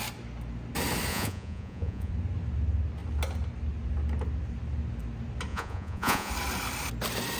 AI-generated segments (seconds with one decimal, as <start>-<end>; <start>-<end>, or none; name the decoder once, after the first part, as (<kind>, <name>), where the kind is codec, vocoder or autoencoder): 1.1-2.1 (vocoder, Vocos); 5.5-6.3